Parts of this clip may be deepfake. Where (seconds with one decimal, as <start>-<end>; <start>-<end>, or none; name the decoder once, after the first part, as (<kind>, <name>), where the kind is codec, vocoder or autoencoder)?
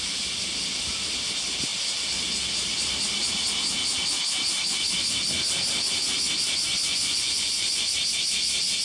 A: 6.7-7.9 (vocoder, Vocos)